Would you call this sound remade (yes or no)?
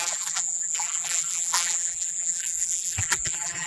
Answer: yes